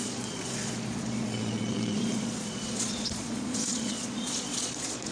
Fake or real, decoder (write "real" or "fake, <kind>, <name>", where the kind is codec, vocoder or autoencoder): fake, vocoder, Vocos